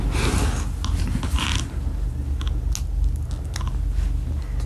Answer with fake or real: real